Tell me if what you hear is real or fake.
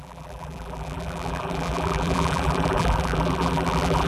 fake